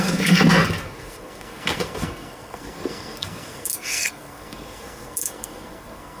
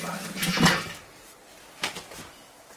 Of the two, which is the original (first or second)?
second